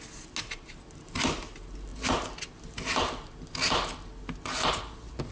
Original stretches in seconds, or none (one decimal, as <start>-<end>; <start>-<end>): 0.0-5.3